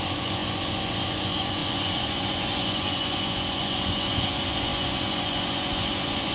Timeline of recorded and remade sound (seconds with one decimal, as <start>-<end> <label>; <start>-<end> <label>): 0.0-6.3 remade